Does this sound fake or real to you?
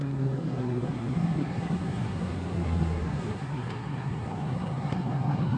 fake